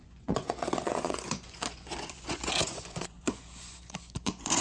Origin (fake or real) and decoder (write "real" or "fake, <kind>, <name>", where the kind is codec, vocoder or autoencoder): fake, vocoder, Vocos